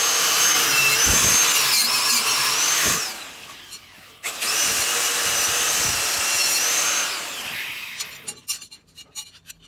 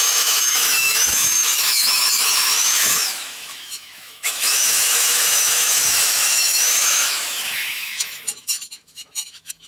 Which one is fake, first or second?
second